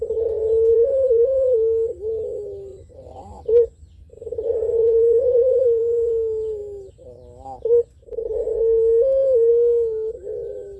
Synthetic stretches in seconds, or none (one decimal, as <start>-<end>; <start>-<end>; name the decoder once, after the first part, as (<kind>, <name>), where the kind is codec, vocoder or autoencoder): 0.7-1.5 (vocoder, Vocos); 2.7-6.1